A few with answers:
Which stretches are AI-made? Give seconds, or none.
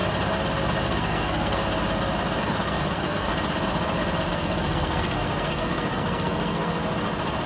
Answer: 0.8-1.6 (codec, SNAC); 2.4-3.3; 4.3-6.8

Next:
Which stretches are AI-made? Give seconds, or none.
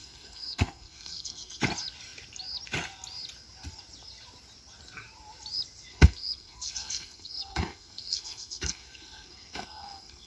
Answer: 0.0-1.6 (codec, SNAC); 5.9-10.3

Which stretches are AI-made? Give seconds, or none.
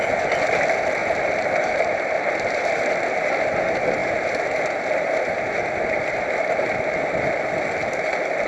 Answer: none